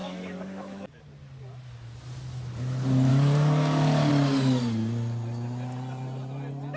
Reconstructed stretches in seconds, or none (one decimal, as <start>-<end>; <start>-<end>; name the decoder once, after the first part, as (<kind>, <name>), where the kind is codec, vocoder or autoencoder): 0.0-1.0 (codec, DAC); 3.1-4.1